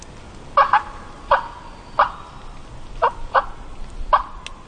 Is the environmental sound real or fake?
real